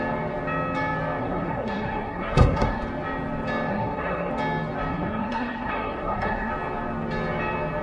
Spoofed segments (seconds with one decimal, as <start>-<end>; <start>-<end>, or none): 1.2-2.8; 3.7-4.3; 4.9-6.5